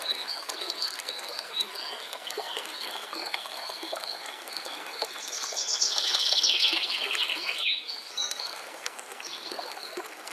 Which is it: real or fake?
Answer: fake